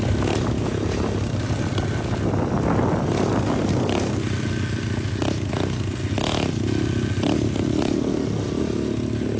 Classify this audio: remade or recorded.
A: recorded